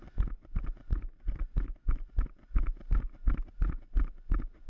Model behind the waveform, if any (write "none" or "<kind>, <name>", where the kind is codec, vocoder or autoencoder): none